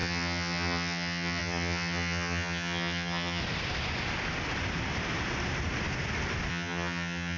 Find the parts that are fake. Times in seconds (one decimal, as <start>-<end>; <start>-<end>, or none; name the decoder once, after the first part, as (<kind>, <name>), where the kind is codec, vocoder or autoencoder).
0.0-3.4 (vocoder, HiFi-GAN); 6.5-7.4